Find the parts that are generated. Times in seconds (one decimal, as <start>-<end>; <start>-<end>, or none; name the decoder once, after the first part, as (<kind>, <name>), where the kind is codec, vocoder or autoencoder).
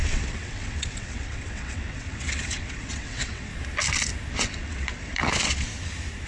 0.0-3.5 (vocoder, WaveNeXt); 4.3-5.7